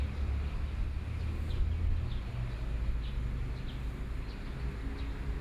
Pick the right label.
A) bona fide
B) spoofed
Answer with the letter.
A